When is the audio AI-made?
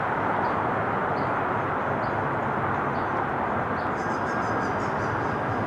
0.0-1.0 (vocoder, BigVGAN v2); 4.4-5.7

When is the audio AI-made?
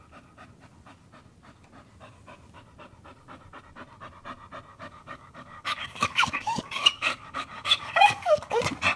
4.7-8.6 (codec, DAC)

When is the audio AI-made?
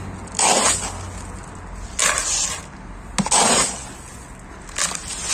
none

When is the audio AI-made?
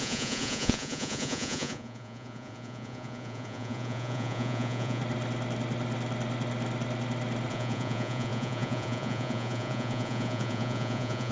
0.0-5.0 (vocoder, Vocos); 7.5-11.3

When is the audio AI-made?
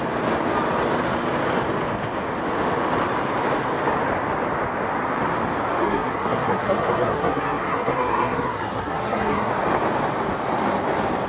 5.8-9.5 (codec, SNAC)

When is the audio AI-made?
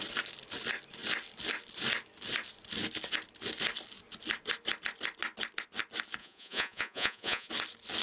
6.2-7.5 (vocoder, Vocos)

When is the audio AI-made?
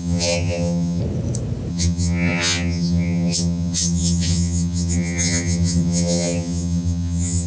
0.0-1.0 (vocoder, HiFi-GAN); 1.7-7.5